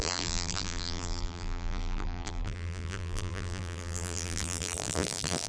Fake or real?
fake